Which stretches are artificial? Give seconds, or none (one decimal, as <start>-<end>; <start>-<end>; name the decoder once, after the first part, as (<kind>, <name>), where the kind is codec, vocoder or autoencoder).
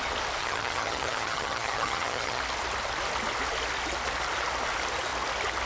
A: 0.4-2.4 (vocoder, HiFi-GAN)